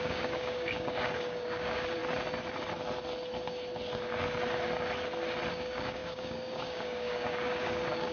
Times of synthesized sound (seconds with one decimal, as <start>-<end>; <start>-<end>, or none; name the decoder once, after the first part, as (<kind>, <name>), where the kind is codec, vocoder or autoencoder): 0.0-2.0 (codec, DAC); 5.5-8.1

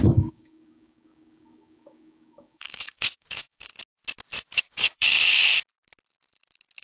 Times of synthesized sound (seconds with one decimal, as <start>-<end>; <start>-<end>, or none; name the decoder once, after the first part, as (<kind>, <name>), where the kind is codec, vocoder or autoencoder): 0.0-3.7 (codec, DAC); 4.6-5.5

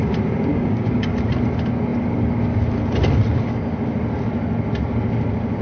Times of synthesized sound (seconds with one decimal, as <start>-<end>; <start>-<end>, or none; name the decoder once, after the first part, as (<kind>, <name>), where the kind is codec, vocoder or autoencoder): 0.5-1.1 (codec, DAC)

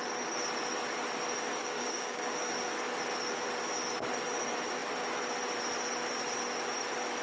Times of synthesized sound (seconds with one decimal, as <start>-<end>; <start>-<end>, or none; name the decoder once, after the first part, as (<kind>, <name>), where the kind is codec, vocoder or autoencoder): 1.6-2.5 (codec, DAC)

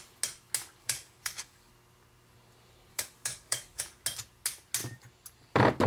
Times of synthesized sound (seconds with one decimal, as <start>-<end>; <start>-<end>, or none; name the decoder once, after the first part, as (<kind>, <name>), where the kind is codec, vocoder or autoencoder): 0.8-1.7 (codec, DAC); 2.9-3.8